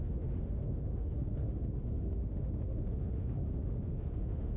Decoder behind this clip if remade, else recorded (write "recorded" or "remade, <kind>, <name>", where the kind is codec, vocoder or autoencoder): remade, autoencoder, DAC-VAE